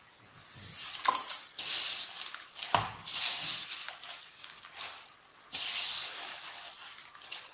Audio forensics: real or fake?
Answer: real